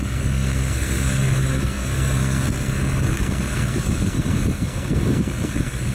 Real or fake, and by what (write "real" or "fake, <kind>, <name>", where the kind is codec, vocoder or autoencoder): fake, codec, SNAC